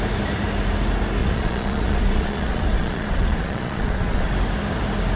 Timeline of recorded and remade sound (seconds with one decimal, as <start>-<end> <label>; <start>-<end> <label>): 0.0-1.2 recorded; 1.2-4.3 remade; 4.3-5.2 recorded